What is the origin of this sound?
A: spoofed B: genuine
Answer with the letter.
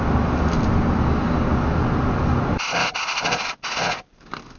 B